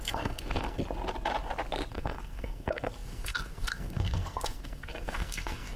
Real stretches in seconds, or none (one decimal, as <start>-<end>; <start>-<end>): 0.8-1.9